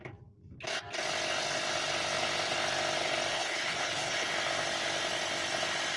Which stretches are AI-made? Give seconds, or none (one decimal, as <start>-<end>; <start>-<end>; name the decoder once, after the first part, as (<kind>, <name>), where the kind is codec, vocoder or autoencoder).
3.3-4.3 (codec, HILCodec)